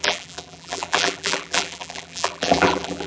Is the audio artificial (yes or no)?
yes